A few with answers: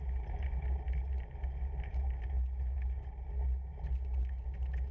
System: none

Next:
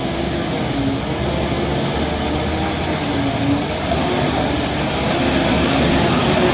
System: none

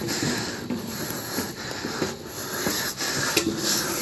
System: none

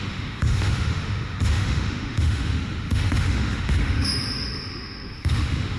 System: autoencoder, DAC-VAE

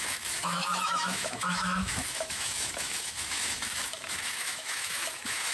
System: autoencoder, DAC-VAE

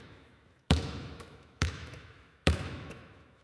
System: autoencoder, DAC-VAE